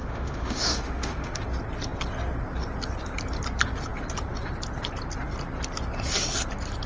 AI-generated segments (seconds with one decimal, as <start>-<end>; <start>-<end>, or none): 0.0-1.4